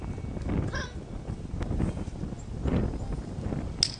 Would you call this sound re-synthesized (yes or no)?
no